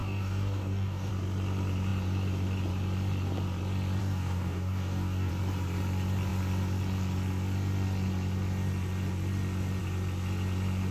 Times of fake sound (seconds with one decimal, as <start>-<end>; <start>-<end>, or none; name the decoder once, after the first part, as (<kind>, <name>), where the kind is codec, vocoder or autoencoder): 0.0-1.1 (codec, DAC); 4.0-5.3